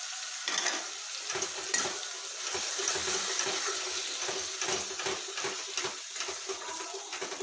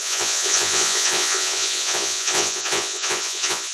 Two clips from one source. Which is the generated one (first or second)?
second